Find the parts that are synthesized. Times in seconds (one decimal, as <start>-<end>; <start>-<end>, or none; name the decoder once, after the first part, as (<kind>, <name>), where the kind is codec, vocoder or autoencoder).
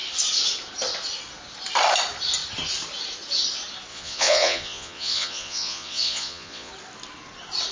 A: 3.9-6.7 (vocoder, Vocos)